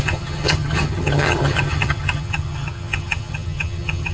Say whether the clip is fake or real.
fake